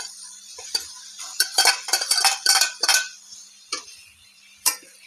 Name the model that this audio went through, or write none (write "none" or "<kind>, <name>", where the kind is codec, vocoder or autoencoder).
vocoder, BigVGAN v2